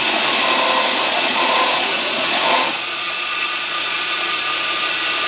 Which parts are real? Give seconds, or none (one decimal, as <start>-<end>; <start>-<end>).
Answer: 0.0-1.1; 4.3-5.3